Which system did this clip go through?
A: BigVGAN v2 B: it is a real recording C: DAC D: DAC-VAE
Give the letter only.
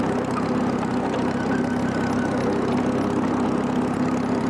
B